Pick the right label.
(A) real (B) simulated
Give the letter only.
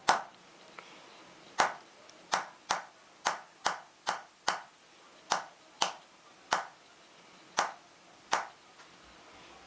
A